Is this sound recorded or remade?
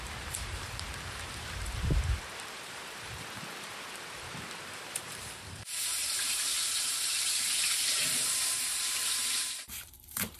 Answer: remade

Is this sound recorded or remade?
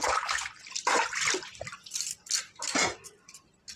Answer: recorded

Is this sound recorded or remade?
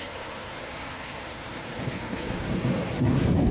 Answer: remade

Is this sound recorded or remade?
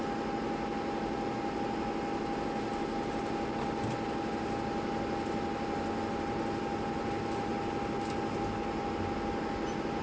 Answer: recorded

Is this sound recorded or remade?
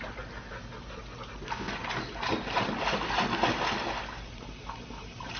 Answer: recorded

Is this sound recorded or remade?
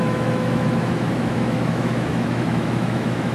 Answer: remade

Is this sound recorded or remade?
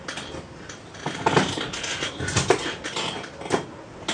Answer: recorded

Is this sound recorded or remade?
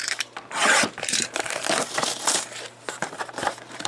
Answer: remade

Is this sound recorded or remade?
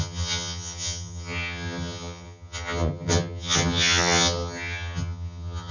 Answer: remade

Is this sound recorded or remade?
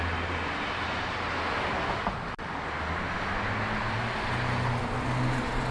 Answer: recorded